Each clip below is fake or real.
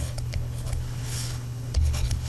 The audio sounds fake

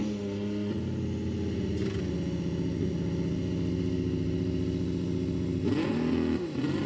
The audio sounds real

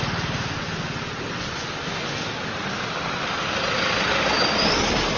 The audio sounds real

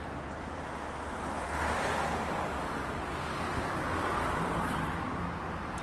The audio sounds real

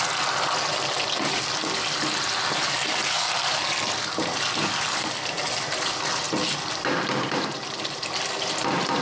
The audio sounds real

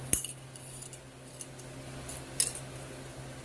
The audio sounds real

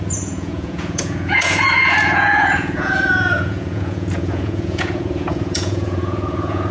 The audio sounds fake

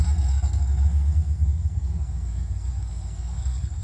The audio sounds fake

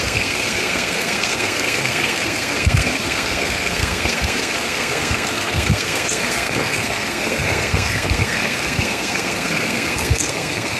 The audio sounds fake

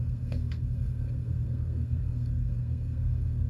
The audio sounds fake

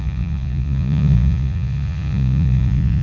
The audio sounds fake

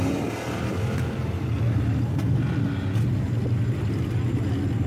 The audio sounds real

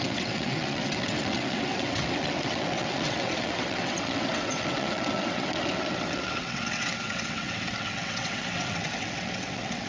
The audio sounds fake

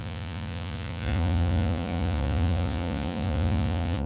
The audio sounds fake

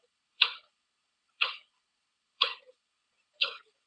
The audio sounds fake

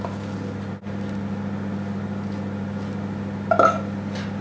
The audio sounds real